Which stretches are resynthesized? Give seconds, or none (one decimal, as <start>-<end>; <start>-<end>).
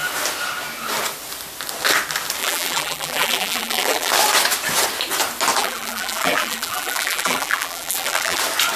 2.4-4.1; 5.6-8.4